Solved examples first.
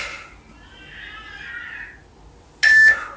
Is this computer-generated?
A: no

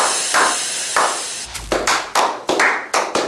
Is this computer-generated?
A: no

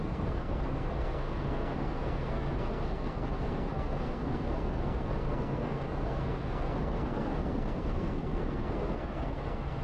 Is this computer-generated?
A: yes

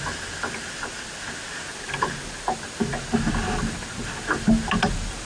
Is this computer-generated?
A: no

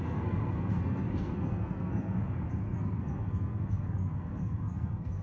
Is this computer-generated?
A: yes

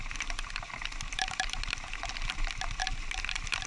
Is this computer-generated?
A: no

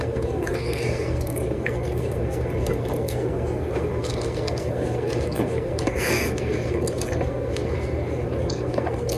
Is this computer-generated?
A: yes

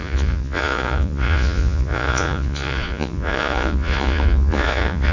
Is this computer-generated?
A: yes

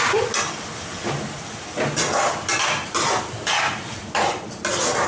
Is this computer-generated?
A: no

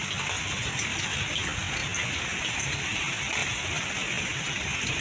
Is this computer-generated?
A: no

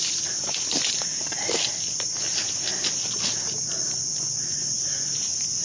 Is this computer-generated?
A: no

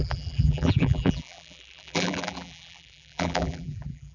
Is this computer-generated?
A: yes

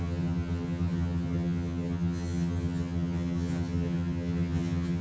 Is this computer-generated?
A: yes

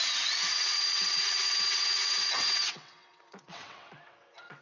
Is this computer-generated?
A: yes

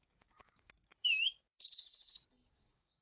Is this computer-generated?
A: yes